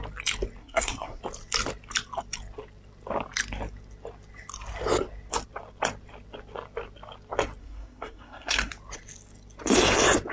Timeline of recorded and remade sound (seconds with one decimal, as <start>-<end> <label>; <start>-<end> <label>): 0.0-0.6 recorded; 0.6-1.2 remade; 1.2-7.6 recorded; 7.6-8.7 remade; 8.7-10.3 recorded